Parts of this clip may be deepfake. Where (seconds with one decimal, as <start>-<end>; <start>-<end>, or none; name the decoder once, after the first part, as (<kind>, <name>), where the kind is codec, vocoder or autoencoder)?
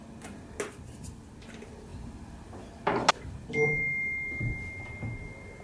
none